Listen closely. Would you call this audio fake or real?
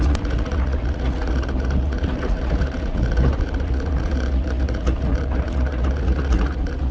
fake